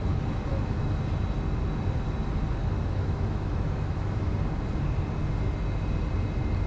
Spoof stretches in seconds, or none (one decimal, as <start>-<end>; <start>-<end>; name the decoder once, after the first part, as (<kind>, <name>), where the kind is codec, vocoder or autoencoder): 0.5-1.0 (autoencoder, DAC-VAE); 2.6-4.3